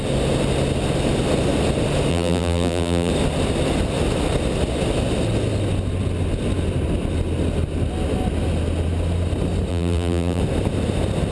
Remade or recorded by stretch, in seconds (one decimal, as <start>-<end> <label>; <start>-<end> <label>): 0.0-2.1 recorded; 2.1-3.1 remade; 3.1-9.7 recorded; 9.7-10.4 remade; 10.4-11.3 recorded